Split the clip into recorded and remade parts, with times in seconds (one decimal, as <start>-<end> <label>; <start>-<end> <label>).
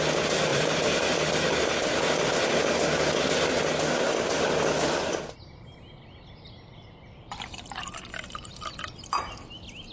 0.0-0.5 recorded; 0.5-2.4 remade; 2.4-9.9 recorded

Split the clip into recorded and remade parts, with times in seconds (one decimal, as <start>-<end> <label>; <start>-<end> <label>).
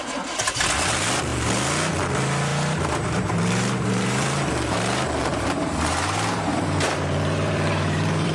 0.0-2.5 recorded; 2.5-4.5 remade; 4.5-5.3 recorded; 5.3-8.3 remade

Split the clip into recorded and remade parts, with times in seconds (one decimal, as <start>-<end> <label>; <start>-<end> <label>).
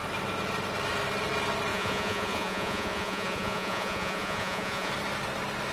0.0-1.7 recorded; 1.7-4.9 remade; 4.9-5.7 recorded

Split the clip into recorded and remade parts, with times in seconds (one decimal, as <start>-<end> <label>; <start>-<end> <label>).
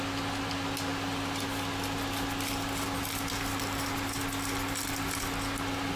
0.0-6.0 recorded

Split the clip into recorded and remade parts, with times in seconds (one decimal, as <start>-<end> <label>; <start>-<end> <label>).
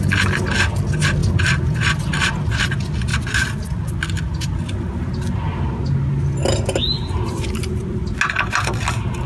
0.0-9.3 recorded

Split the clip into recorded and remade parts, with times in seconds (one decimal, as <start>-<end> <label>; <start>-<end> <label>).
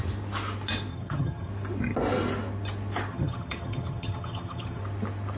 0.0-0.9 recorded; 0.9-1.5 remade; 1.5-3.1 recorded; 3.1-4.8 remade; 4.8-5.4 recorded